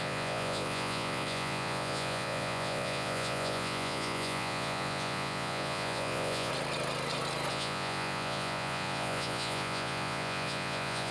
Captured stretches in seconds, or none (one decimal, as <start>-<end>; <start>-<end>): 6.5-7.5